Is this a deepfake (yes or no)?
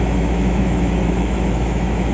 yes